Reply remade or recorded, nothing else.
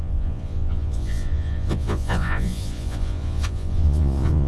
remade